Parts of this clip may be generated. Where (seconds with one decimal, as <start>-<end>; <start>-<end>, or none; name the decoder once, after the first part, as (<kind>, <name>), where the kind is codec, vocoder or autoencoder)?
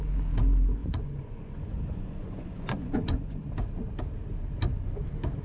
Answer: 0.8-3.5 (vocoder, Vocos)